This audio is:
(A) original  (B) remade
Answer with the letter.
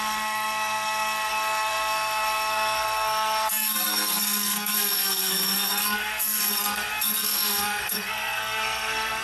B